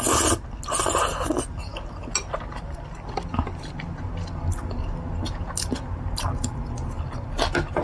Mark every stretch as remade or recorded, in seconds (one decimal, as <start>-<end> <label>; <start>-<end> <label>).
0.0-7.8 recorded